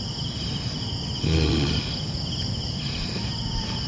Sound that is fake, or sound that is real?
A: real